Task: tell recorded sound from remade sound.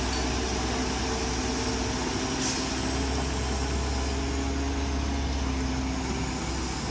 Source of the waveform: recorded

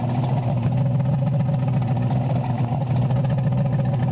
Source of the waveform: recorded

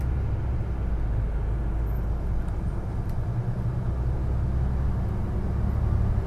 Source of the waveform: recorded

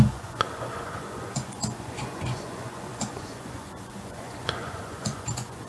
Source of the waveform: remade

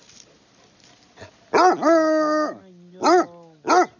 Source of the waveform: recorded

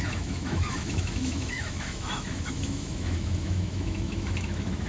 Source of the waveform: remade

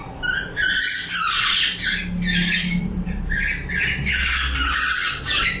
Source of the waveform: recorded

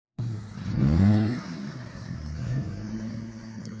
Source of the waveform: remade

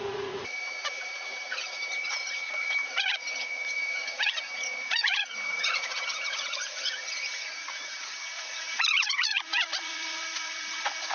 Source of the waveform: remade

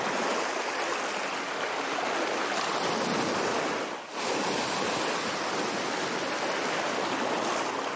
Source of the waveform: recorded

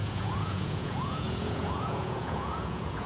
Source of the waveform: remade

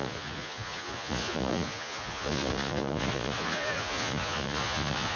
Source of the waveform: remade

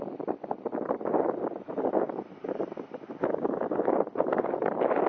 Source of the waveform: recorded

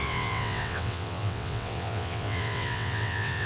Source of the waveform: remade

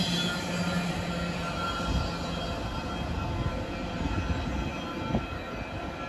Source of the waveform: recorded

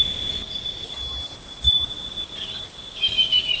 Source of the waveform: recorded